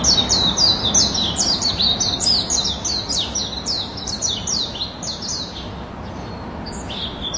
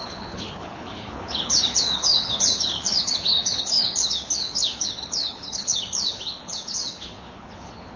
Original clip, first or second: first